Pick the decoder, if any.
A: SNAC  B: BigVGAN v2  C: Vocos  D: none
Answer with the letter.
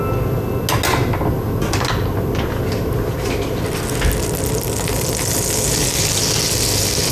D